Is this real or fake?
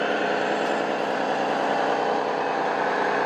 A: real